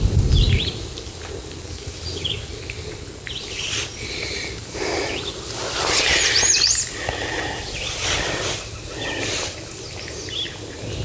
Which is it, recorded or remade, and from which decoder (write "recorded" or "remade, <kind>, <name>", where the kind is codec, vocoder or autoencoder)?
recorded